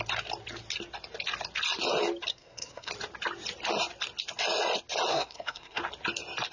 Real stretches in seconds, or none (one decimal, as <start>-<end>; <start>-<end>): 0.0-2.3; 2.9-5.1; 5.8-6.5